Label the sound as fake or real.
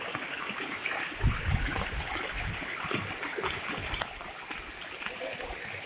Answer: real